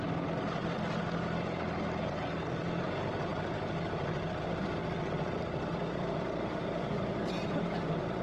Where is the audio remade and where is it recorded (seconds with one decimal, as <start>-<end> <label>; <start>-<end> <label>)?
0.0-3.3 recorded; 3.3-8.2 remade